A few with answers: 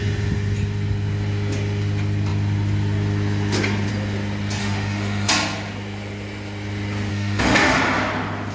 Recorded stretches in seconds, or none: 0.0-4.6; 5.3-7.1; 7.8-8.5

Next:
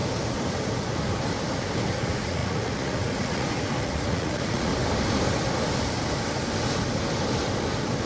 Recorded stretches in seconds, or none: 0.0-1.9; 4.7-8.1

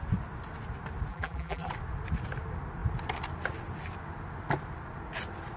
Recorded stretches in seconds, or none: 0.0-1.1; 1.7-5.6

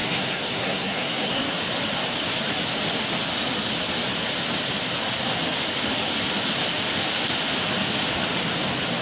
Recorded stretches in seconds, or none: 1.5-9.0

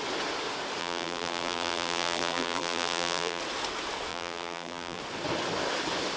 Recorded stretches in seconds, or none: 0.0-0.8; 3.4-4.1; 5.0-6.2

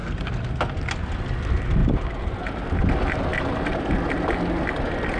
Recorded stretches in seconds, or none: 0.0-5.2

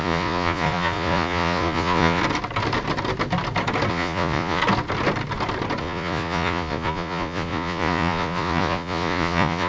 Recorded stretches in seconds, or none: 2.2-3.9; 4.6-5.8

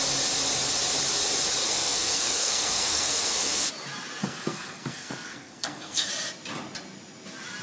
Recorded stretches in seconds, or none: 0.0-1.6; 3.7-4.2; 6.1-7.6